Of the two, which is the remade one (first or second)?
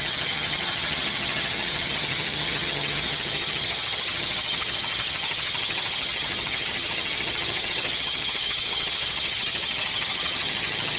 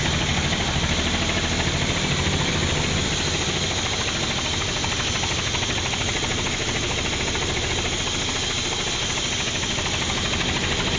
first